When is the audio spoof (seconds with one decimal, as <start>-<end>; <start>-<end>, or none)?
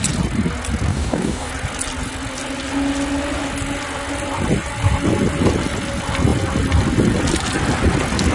0.9-1.5